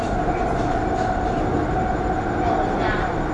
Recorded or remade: recorded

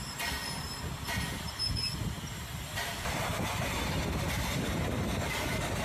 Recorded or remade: recorded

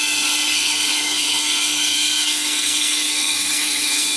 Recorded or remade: remade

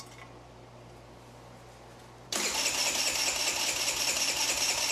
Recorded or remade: recorded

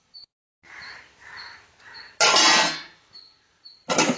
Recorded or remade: recorded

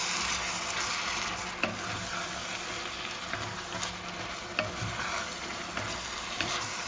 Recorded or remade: recorded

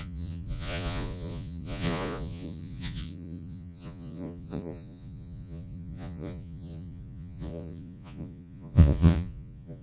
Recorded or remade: remade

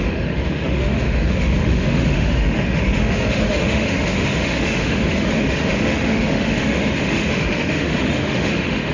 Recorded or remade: remade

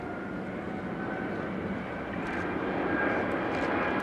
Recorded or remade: recorded